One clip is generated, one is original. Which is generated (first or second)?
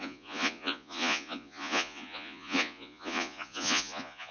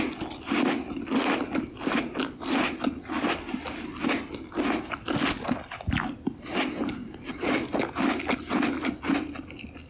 first